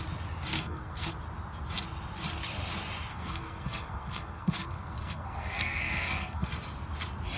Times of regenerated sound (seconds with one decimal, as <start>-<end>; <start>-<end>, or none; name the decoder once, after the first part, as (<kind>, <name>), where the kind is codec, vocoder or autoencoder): 0.5-1.1 (codec, SNAC); 3.1-6.5